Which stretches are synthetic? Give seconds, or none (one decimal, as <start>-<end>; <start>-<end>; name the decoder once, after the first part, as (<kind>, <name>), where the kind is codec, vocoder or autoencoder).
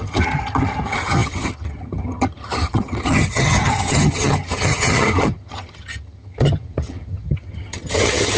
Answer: 0.0-8.4 (vocoder, HiFi-GAN)